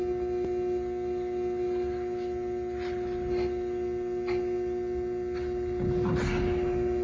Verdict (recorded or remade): recorded